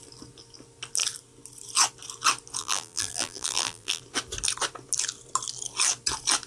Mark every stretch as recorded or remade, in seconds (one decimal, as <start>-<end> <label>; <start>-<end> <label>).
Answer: 0.0-2.6 recorded; 2.6-4.0 remade; 4.0-6.5 recorded